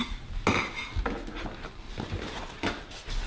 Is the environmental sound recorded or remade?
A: recorded